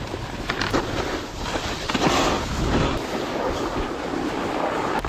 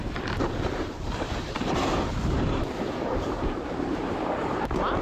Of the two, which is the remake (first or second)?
second